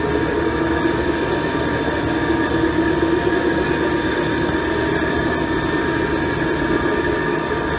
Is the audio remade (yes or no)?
no